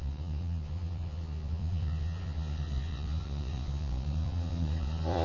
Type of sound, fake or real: fake